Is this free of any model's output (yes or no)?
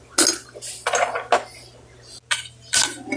yes